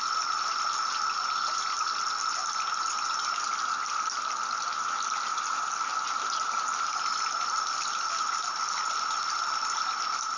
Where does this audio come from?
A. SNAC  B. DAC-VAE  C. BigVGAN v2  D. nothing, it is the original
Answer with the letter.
D